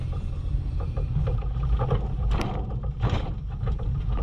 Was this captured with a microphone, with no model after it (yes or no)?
no